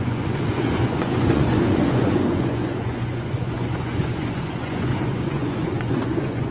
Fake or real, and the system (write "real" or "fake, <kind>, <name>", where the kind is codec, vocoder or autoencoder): fake, vocoder, Vocos